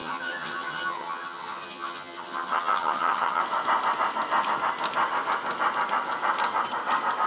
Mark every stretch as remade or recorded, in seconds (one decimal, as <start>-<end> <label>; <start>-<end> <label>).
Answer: 0.0-3.4 remade; 3.4-7.3 recorded